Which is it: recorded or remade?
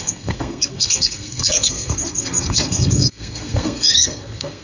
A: remade